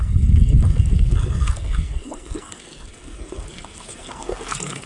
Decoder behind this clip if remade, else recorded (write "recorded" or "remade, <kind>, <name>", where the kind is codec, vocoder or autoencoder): remade, codec, SNAC